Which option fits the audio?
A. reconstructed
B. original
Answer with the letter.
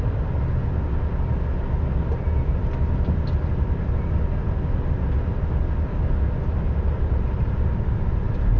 B